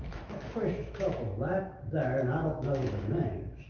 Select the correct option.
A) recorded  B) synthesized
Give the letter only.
B